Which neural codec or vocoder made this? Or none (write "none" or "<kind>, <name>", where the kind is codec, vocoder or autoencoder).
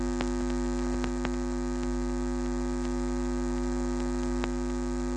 none